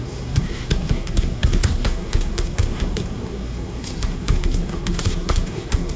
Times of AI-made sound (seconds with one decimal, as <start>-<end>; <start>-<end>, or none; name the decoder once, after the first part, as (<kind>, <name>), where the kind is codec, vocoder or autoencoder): 0.0-6.0 (codec, SNAC)

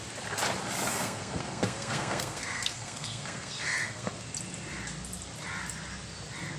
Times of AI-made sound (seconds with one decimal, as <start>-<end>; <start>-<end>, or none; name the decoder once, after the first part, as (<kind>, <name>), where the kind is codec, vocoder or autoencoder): 0.9-4.1 (codec, SNAC)